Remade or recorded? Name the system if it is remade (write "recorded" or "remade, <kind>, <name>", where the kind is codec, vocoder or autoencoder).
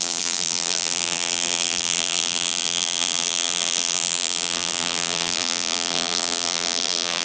remade, vocoder, BigVGAN v2